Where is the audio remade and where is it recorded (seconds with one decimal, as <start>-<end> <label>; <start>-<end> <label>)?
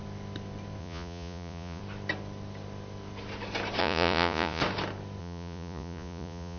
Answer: 0.0-0.8 recorded; 0.8-1.8 remade; 1.8-3.8 recorded; 3.8-4.6 remade; 4.6-5.2 recorded; 5.2-6.6 remade